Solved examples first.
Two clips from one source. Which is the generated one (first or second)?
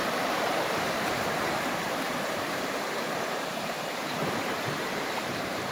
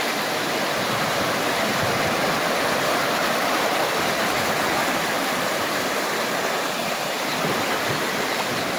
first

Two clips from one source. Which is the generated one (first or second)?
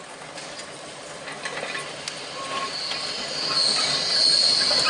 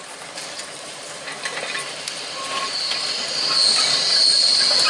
second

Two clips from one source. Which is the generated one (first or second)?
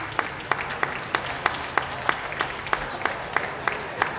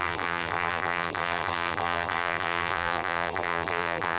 second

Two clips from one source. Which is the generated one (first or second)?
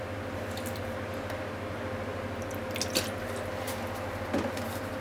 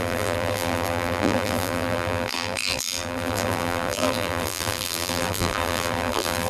second